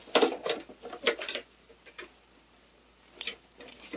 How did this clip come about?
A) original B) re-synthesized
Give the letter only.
A